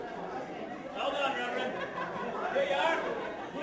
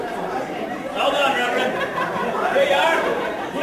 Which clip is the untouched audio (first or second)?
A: first